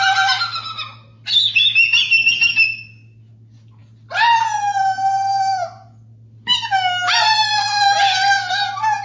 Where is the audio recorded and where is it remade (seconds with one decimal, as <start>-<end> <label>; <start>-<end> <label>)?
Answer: 0.0-9.0 recorded